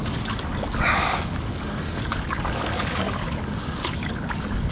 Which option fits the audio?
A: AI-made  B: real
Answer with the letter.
A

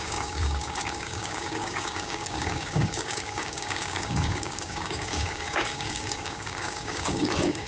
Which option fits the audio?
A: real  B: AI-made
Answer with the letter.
B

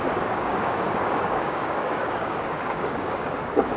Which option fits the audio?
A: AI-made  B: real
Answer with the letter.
A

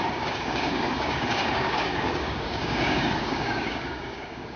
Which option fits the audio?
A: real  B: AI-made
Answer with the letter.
B